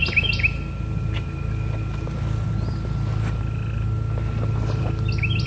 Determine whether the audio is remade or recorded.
recorded